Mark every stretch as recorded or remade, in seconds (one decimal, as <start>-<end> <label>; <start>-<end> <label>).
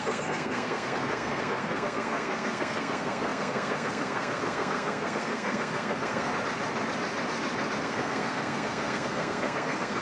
0.0-6.3 remade; 6.3-7.8 recorded; 7.8-10.0 remade